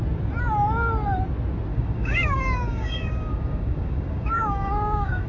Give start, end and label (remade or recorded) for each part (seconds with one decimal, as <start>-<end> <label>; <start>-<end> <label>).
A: 0.0-1.7 recorded; 1.7-5.3 remade